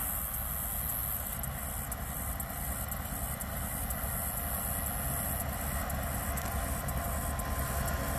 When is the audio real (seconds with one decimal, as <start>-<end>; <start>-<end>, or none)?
0.0-8.2